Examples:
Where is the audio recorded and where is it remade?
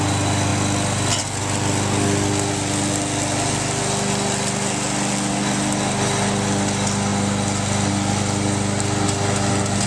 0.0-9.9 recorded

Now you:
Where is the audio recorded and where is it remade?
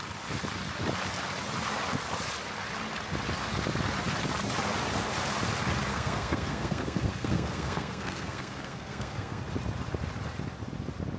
0.0-5.9 recorded; 5.9-9.4 remade; 9.4-11.2 recorded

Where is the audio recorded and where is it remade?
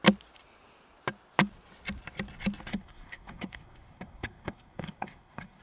0.0-2.7 recorded; 2.7-5.6 remade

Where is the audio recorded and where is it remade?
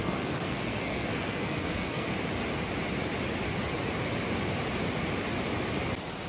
0.0-2.1 remade; 2.1-6.3 recorded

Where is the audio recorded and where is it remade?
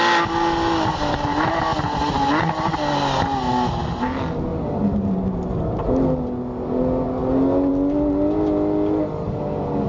0.0-9.9 recorded